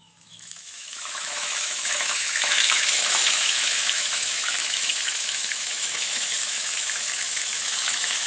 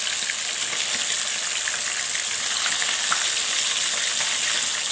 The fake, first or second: first